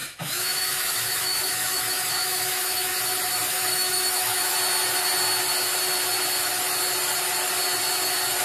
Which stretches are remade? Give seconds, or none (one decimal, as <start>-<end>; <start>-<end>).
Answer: 0.0-2.9; 3.5-4.5